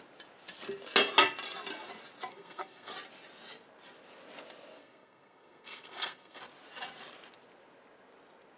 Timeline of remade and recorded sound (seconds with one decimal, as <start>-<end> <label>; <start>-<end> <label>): 0.0-2.3 recorded; 2.3-2.9 remade; 2.9-4.8 recorded; 4.8-6.4 remade; 6.4-8.6 recorded